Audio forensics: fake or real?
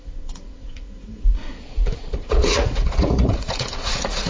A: fake